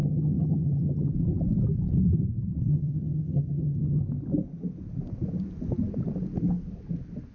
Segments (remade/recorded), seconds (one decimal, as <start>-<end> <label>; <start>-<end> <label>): 0.0-1.1 remade; 1.1-2.7 recorded; 2.7-4.0 remade; 4.0-7.3 recorded